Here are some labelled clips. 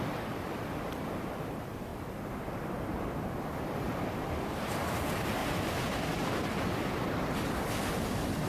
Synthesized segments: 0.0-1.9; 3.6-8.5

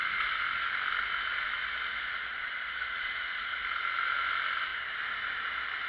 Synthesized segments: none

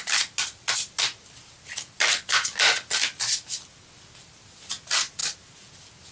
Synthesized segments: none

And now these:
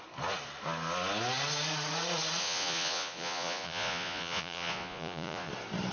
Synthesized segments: 2.4-5.5